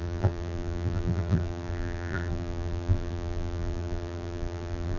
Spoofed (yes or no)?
yes